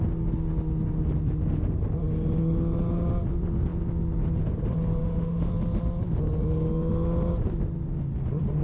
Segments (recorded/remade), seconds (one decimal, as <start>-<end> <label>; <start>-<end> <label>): 0.0-5.0 recorded; 5.0-5.5 remade; 5.5-8.6 recorded